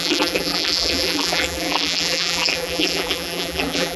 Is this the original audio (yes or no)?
no